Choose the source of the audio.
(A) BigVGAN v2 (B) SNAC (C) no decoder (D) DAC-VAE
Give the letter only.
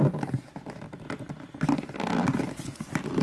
C